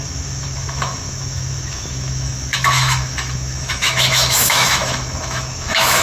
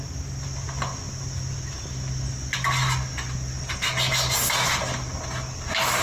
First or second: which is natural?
second